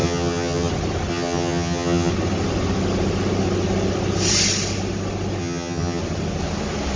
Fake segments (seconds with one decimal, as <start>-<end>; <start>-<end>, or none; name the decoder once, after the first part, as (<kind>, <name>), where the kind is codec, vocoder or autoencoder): 0.0-0.7 (vocoder, HiFi-GAN); 1.1-2.1; 5.4-6.0